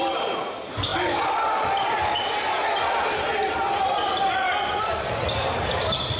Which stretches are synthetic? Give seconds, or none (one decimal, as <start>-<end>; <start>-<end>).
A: 0.0-6.2